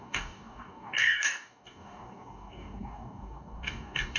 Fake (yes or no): yes